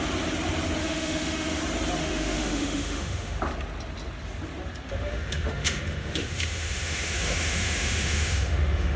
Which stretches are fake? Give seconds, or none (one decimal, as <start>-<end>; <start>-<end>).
0.8-1.6; 2.0-3.4; 4.9-9.0